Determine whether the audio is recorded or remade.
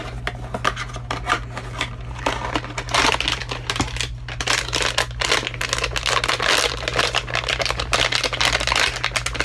recorded